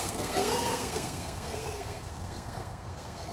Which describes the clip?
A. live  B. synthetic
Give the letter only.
B